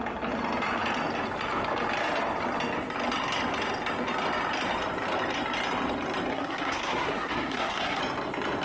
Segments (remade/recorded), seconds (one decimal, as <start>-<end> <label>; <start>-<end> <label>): 0.0-6.3 recorded; 6.3-8.0 remade; 8.0-8.6 recorded